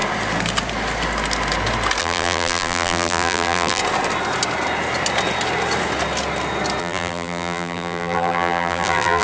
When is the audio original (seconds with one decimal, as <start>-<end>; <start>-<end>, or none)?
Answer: 0.0-2.0; 3.8-6.8